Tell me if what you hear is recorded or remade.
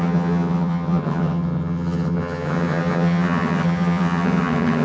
remade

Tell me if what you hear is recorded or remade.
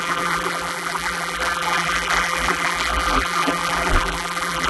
remade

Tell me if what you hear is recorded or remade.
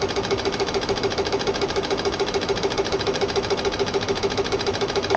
remade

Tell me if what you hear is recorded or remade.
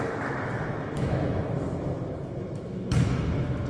remade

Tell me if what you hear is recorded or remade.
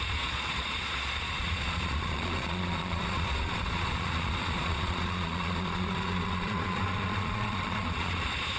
remade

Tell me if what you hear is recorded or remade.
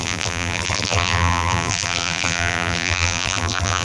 remade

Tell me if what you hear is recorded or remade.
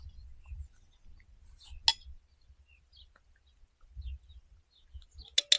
recorded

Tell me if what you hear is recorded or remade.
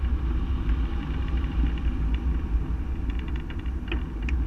recorded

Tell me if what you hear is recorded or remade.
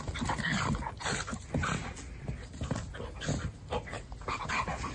recorded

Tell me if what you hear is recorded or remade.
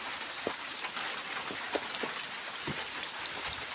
recorded